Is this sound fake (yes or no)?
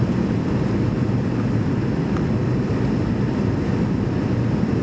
no